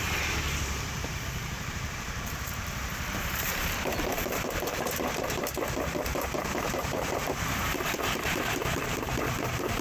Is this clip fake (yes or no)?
yes